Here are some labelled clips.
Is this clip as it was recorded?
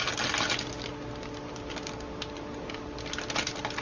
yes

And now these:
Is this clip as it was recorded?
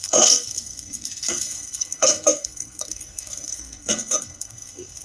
no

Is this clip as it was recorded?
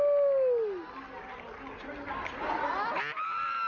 yes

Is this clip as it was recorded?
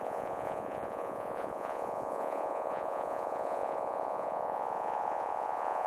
no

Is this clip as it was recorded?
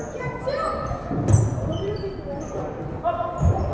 yes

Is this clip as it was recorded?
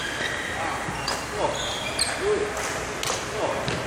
yes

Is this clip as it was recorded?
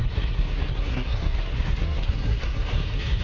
no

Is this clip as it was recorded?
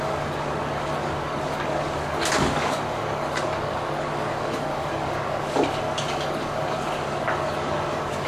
no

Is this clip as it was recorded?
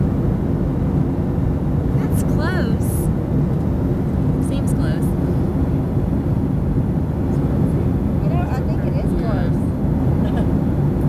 yes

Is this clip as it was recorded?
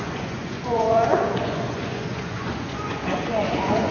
no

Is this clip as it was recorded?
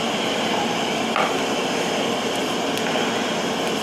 yes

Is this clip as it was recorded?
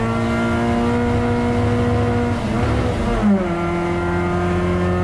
yes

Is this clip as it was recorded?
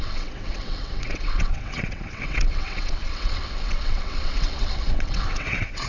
no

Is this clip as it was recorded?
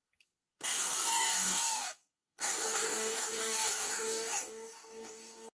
no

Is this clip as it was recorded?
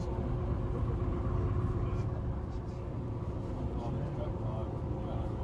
yes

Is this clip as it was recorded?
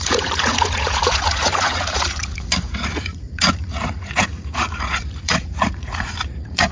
no